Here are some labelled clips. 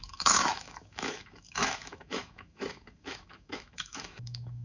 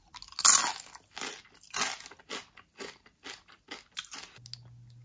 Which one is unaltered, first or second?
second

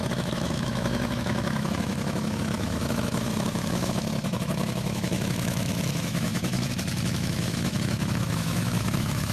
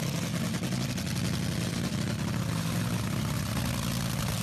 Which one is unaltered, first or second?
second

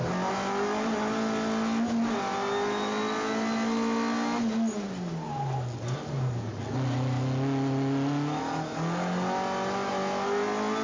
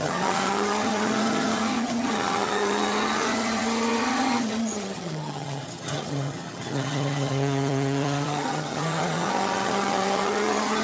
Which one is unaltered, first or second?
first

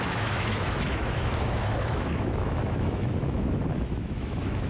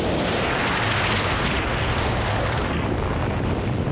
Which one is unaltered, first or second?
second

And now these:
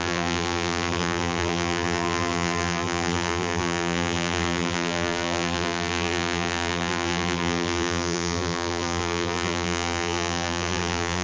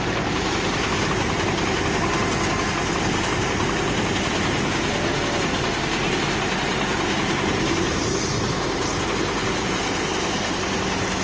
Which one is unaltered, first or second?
second